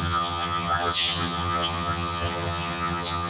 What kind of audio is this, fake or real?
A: fake